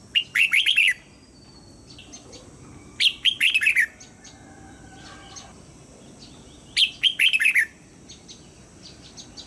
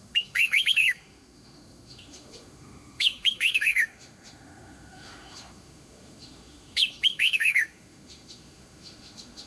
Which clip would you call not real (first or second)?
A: second